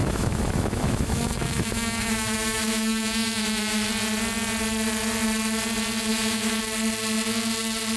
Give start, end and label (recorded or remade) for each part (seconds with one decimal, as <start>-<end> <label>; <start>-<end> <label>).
0.0-3.9 remade; 3.9-6.1 recorded; 6.1-6.6 remade; 6.6-8.0 recorded

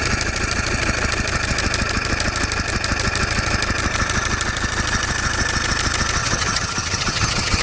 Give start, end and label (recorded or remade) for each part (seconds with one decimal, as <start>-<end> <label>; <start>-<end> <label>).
0.0-6.2 recorded; 6.2-7.6 remade

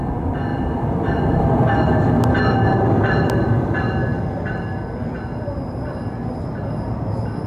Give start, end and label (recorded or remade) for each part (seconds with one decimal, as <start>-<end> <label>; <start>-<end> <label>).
0.0-7.5 recorded

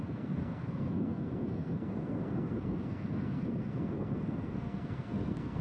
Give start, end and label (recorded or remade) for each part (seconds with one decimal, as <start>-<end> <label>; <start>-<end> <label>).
0.0-5.6 remade

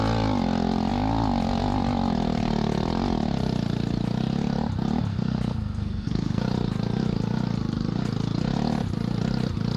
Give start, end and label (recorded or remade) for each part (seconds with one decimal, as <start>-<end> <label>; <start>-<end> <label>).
0.0-5.1 recorded; 5.1-6.4 remade; 6.4-9.8 recorded

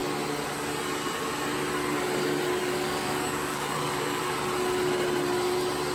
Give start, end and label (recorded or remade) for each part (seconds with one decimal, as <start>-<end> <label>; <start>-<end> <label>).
0.0-2.6 recorded; 2.6-4.2 remade; 4.2-5.9 recorded

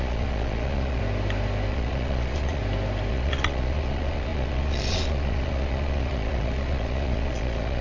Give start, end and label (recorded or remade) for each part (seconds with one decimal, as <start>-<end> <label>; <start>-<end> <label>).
0.0-1.0 remade; 1.0-1.7 recorded; 1.7-2.6 remade; 2.6-3.1 recorded; 3.1-7.8 remade